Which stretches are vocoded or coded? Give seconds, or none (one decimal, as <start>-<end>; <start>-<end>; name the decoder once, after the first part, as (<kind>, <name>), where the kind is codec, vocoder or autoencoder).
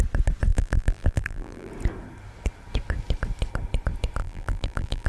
0.5-1.7 (vocoder, BigVGAN v2); 4.2-5.1